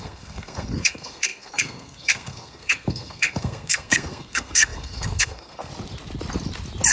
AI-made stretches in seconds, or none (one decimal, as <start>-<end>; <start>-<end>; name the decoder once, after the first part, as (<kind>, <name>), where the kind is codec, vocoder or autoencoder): 0.0-5.7 (codec, SNAC)